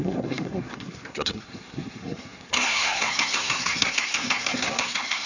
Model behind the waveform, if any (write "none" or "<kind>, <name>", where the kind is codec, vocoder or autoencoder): codec, SNAC